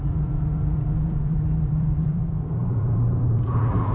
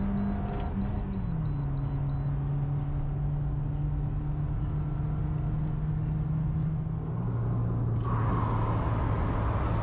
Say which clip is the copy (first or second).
first